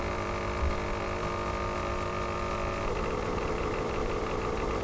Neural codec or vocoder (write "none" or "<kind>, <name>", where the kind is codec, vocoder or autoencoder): none